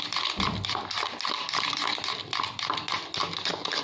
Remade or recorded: recorded